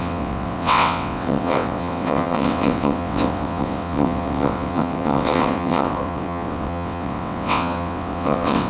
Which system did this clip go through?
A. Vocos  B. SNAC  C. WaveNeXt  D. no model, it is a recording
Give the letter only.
C